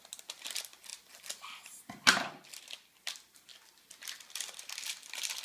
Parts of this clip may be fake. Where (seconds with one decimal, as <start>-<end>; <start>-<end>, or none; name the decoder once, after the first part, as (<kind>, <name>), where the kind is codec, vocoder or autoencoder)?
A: 3.5-4.6 (vocoder, BigVGAN v2)